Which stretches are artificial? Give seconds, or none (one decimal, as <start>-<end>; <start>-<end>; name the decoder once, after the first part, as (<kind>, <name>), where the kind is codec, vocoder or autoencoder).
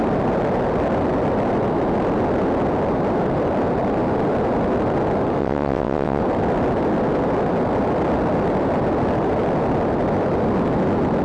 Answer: 5.4-6.2 (vocoder, WaveNeXt)